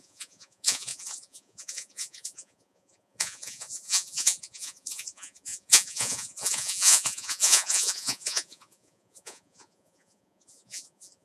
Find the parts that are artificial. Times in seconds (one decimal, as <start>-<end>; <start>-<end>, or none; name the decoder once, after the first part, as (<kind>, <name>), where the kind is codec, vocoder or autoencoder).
0.0-11.2 (vocoder, Vocos)